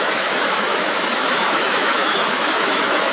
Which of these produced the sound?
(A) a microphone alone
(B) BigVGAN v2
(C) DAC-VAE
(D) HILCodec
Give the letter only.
C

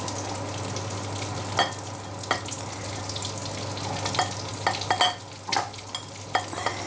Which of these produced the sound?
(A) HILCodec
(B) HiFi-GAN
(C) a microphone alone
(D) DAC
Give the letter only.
C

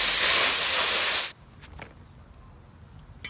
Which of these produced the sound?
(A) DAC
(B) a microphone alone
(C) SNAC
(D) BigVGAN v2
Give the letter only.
B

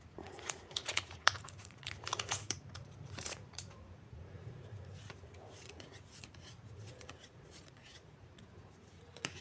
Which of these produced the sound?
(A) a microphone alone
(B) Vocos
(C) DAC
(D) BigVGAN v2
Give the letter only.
B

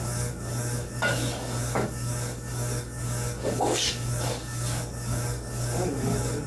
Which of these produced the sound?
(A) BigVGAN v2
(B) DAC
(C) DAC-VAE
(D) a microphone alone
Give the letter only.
B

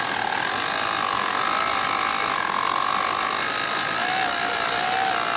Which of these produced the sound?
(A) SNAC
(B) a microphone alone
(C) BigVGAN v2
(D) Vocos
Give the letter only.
B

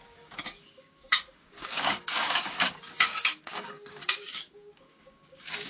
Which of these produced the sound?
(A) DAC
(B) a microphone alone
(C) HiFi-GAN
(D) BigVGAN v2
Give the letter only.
A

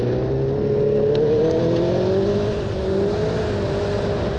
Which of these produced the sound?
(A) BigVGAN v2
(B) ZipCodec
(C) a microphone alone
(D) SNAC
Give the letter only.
C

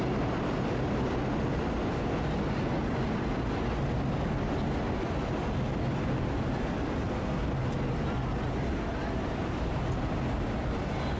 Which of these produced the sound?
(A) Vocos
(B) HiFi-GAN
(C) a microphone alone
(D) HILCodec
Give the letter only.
C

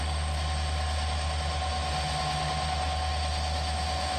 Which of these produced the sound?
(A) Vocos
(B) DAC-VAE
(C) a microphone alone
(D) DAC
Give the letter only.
C